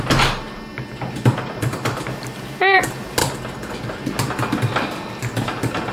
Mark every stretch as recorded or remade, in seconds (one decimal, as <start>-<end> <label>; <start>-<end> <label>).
0.0-5.9 recorded